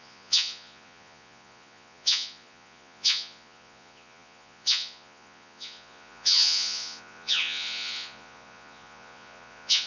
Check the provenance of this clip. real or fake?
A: fake